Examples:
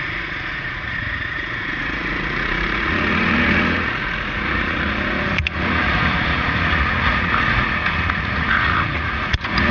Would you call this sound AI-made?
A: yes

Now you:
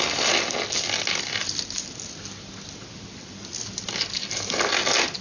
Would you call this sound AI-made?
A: no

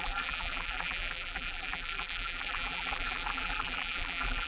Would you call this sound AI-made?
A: yes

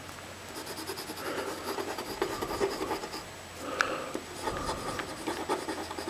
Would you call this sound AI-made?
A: no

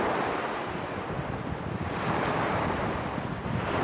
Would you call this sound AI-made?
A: no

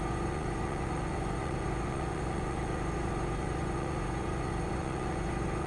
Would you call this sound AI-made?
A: yes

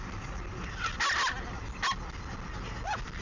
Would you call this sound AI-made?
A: no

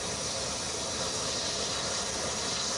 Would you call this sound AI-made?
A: no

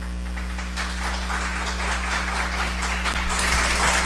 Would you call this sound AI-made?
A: no